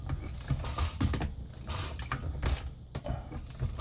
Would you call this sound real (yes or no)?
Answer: yes